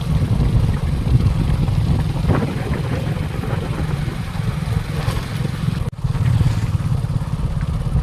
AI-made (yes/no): no